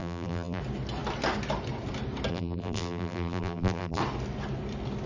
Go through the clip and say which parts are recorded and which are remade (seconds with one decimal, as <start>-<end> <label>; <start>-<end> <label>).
0.0-0.6 remade; 0.6-2.3 recorded; 2.3-4.0 remade; 4.0-5.1 recorded